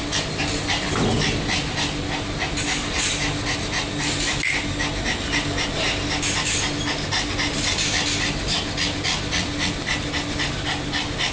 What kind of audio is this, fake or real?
real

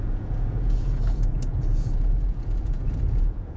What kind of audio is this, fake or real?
fake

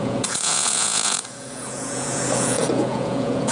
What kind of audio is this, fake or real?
fake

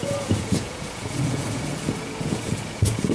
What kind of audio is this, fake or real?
fake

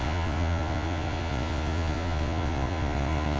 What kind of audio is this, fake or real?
fake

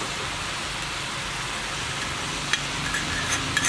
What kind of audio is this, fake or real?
real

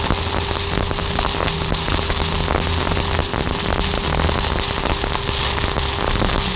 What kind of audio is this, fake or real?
real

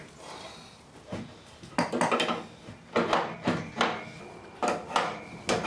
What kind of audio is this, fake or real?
real